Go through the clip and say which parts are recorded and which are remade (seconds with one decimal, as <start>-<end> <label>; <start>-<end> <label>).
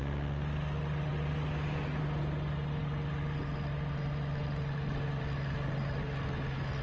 0.0-6.8 recorded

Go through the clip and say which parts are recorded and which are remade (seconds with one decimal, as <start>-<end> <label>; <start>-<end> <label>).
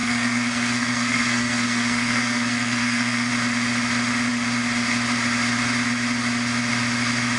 0.0-3.3 remade; 3.3-7.4 recorded